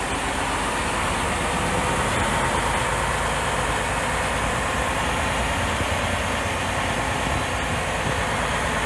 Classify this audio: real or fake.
real